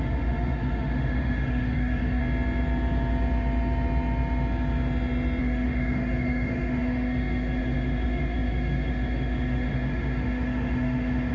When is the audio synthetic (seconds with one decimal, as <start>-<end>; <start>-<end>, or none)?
0.0-2.2; 5.4-11.3